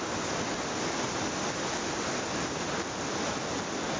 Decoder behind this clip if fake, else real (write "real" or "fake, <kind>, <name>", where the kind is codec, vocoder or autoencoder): real